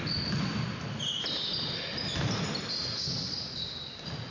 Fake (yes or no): no